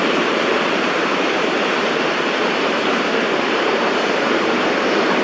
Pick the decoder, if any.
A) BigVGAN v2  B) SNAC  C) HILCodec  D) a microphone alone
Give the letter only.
A